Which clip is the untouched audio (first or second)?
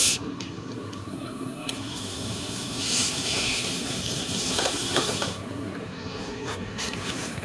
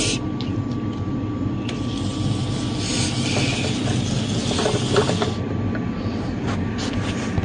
second